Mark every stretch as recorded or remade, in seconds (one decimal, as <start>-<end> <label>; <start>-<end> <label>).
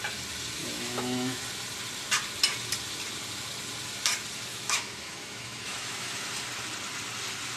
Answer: 0.0-0.6 recorded; 0.6-1.4 remade; 1.4-4.5 recorded; 4.5-6.3 remade; 6.3-7.6 recorded